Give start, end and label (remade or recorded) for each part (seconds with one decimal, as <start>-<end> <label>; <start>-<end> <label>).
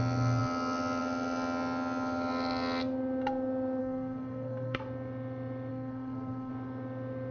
0.0-3.8 recorded; 3.8-4.8 remade; 4.8-5.7 recorded; 5.7-6.5 remade; 6.5-7.3 recorded